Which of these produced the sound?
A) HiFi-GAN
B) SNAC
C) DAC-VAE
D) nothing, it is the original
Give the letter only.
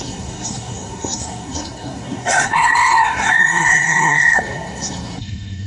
B